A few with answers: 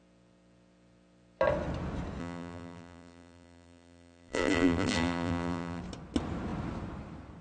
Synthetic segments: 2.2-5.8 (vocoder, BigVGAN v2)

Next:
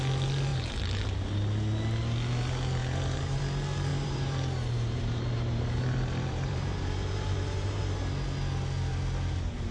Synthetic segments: 0.5-1.0 (vocoder, BigVGAN v2); 2.8-3.4; 3.9-7.8

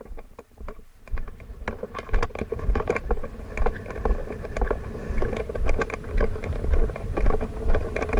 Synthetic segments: 0.0-1.5 (vocoder, BigVGAN v2); 6.4-8.2

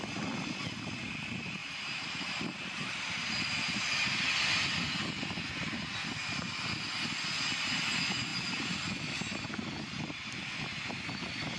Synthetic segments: 1.6-2.2 (vocoder, BigVGAN v2)

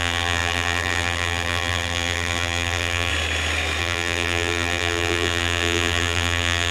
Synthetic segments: 0.0-3.1 (vocoder, BigVGAN v2); 3.8-6.7